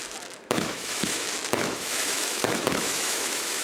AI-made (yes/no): yes